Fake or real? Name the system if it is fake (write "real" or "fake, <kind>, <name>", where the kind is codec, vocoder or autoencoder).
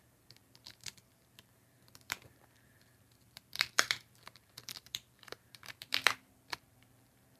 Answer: fake, vocoder, BigVGAN v2